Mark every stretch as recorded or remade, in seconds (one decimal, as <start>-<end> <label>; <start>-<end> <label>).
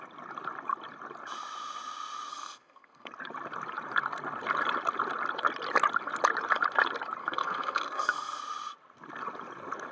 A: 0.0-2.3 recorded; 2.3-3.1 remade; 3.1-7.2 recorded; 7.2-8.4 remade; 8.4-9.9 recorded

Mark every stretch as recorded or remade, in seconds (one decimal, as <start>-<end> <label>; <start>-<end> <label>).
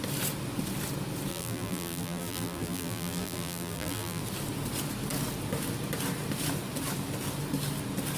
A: 0.0-1.3 recorded; 1.3-4.2 remade; 4.2-8.2 recorded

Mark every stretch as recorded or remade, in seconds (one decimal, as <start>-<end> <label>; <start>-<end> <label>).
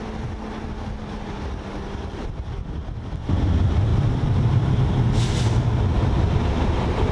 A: 0.0-7.1 recorded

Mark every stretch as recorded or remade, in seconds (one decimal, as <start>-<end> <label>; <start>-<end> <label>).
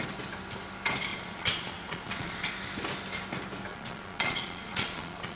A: 0.0-1.1 recorded; 1.1-2.5 remade; 2.5-3.7 recorded; 3.7-5.4 remade